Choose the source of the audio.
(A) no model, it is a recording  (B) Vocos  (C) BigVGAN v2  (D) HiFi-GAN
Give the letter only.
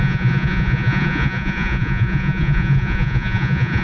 B